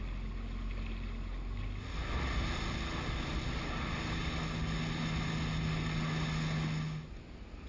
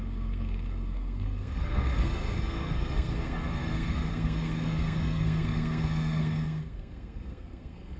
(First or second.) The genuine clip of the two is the first